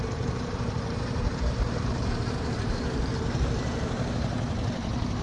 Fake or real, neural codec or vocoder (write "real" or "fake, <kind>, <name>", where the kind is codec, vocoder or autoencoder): fake, vocoder, BigVGAN v2